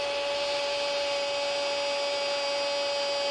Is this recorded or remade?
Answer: recorded